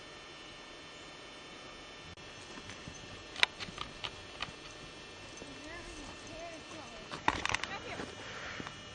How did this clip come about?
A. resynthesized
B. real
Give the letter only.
B